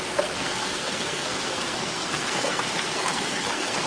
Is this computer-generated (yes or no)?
yes